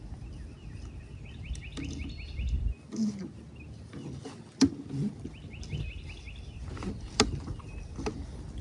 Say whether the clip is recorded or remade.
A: recorded